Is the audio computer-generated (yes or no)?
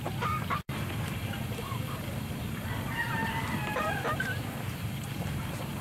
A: yes